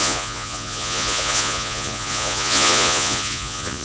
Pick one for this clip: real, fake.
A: fake